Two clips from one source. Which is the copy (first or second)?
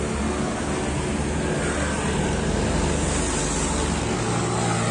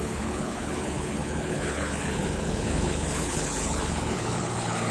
second